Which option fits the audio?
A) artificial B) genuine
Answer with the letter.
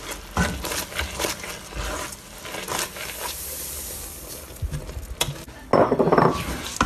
B